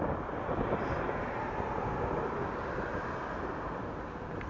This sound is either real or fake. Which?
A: real